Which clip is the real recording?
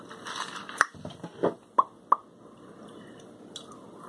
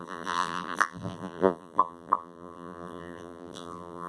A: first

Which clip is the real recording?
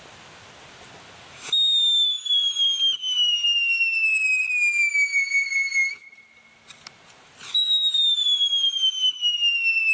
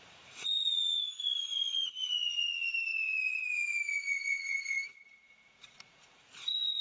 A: first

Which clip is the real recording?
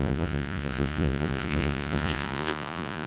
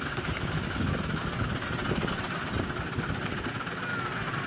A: second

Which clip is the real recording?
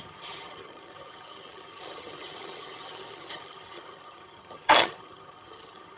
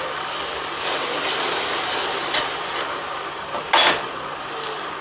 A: second